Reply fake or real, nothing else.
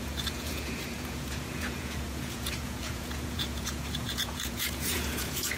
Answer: fake